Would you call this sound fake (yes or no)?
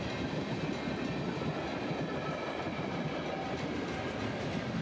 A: no